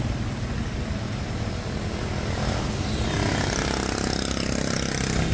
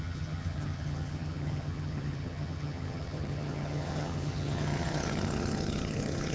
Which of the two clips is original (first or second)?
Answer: first